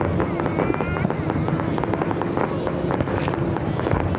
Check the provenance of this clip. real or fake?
real